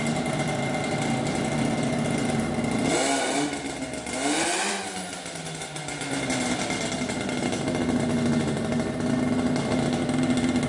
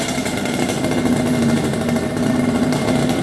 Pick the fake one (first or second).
second